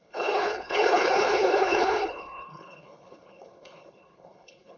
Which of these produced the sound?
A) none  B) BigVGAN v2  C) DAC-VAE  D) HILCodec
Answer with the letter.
D